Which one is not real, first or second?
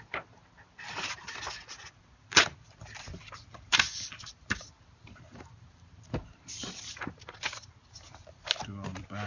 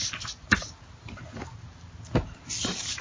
first